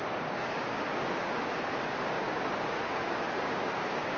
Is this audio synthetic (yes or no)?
yes